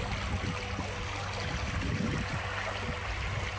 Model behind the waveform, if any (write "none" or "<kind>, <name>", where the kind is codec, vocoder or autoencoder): none